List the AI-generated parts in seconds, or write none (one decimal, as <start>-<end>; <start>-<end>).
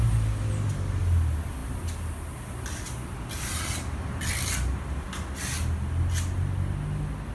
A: none